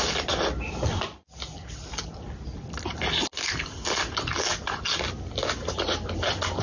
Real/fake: real